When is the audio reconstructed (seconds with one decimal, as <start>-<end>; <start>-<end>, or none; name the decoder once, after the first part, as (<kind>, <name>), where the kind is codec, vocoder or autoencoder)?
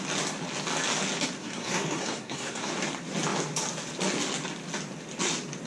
1.4-2.7 (codec, SNAC)